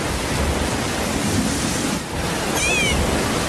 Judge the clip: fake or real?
real